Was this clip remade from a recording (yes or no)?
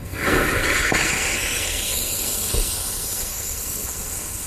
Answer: yes